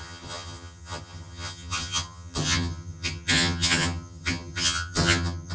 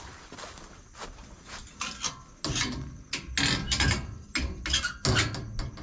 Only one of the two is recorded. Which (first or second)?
second